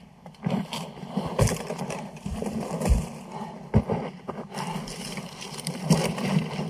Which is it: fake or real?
real